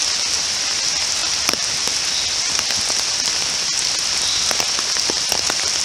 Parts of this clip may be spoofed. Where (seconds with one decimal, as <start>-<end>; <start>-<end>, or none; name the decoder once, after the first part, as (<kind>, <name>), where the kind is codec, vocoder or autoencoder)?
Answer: none